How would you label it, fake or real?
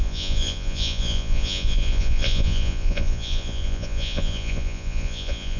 fake